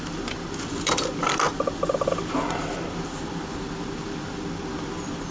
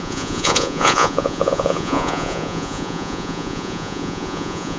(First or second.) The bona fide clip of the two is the first